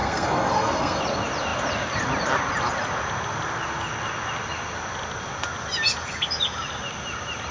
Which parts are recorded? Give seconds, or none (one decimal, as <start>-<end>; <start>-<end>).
1.0-7.5